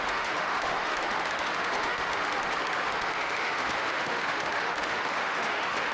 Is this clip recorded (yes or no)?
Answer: no